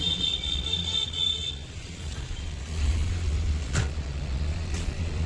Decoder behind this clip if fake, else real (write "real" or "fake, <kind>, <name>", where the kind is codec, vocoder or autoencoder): fake, vocoder, Vocos